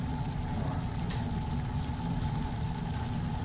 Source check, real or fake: real